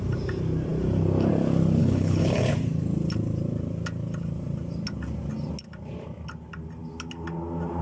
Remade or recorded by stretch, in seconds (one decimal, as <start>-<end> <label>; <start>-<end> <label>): 0.0-1.8 recorded; 1.8-2.5 remade; 2.5-7.8 recorded

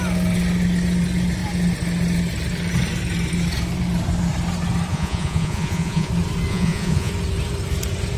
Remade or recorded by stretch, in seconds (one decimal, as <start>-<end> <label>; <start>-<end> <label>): 0.0-4.9 recorded; 4.9-6.1 remade; 6.1-6.5 recorded; 6.5-7.1 remade; 7.1-8.2 recorded

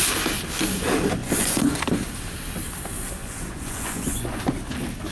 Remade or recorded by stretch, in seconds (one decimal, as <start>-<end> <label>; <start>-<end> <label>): 0.0-1.2 recorded; 1.2-1.8 remade; 1.8-3.2 recorded; 3.2-4.4 remade; 4.4-5.1 recorded

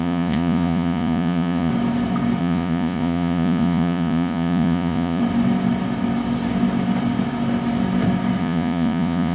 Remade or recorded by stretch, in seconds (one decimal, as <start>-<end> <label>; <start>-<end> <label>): 0.0-1.7 remade; 1.7-2.4 recorded; 2.4-5.2 remade; 5.2-8.4 recorded; 8.4-9.3 remade

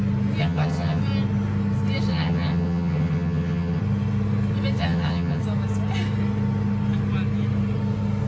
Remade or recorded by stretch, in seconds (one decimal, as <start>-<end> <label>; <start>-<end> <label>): 0.0-0.4 recorded; 0.4-1.0 remade; 1.0-2.1 recorded; 2.1-3.8 remade; 3.8-4.8 recorded; 4.8-5.4 remade; 5.4-8.3 recorded